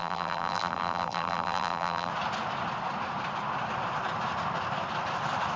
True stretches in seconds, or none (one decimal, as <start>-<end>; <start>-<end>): 2.1-5.6